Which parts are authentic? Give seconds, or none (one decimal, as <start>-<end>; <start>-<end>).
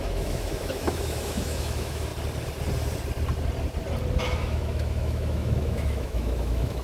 2.1-4.2